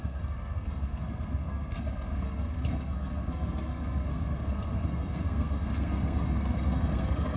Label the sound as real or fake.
fake